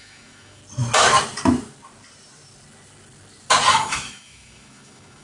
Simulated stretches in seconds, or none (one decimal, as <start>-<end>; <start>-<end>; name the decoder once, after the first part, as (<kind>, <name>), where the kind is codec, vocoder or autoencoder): 0.0-0.6 (autoencoder, DAC-VAE); 3.7-5.2